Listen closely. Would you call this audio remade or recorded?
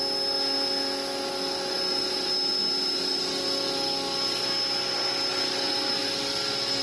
recorded